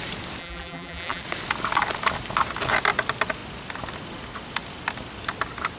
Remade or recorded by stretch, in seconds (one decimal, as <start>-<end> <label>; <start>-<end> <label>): 0.0-0.4 recorded; 0.4-1.2 remade; 1.2-5.8 recorded